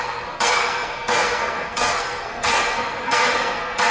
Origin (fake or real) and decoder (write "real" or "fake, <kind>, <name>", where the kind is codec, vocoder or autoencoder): fake, codec, SNAC